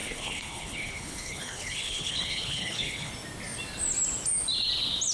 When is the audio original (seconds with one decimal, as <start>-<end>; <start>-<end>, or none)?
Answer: 3.1-5.1